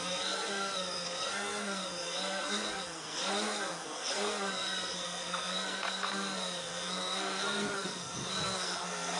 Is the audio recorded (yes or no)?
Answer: no